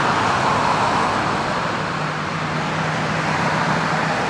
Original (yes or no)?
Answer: yes